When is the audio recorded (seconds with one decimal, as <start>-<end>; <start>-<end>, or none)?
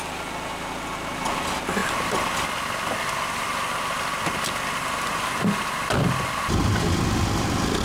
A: 0.0-7.8